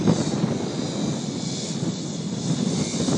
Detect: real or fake real